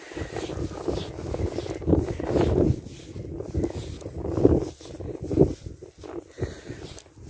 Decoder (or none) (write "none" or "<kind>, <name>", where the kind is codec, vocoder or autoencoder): none